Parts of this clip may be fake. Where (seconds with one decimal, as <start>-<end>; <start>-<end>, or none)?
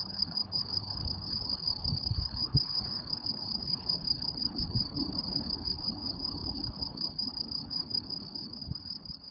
0.0-9.3